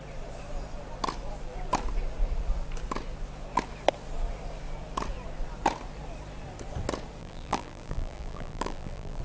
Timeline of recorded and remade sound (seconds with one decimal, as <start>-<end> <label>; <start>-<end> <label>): 0.0-7.2 recorded; 7.2-9.2 remade